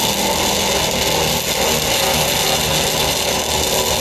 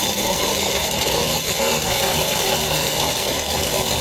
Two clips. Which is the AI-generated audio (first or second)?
second